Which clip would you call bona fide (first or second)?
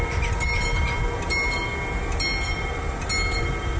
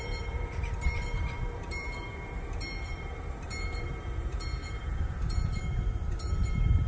first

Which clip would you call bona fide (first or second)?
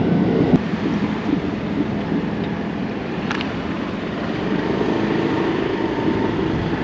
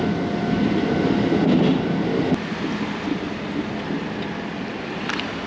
second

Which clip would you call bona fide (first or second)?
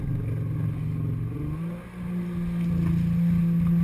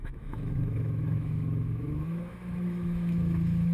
first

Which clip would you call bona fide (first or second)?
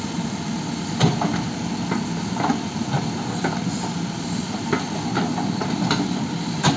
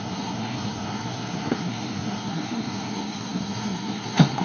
first